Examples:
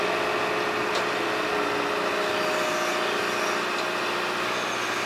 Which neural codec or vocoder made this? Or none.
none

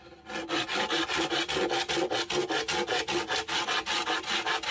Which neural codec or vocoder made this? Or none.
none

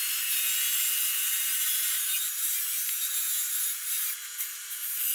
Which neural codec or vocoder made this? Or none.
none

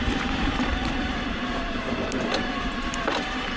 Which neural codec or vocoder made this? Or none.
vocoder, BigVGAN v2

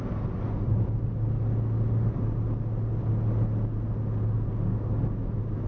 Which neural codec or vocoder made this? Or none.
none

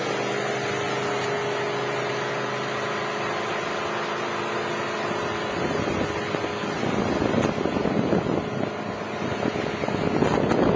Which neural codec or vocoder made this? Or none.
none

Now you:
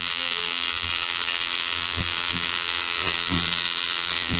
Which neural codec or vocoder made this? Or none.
vocoder, BigVGAN v2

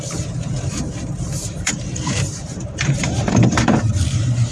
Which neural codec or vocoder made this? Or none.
vocoder, BigVGAN v2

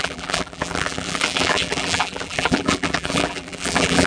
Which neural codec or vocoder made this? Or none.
vocoder, BigVGAN v2